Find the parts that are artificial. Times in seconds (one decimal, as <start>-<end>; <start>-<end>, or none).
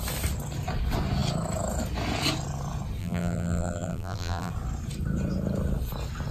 3.0-4.5